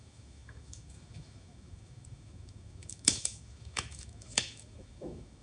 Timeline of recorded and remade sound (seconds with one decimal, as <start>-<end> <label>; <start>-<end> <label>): 0.0-5.4 remade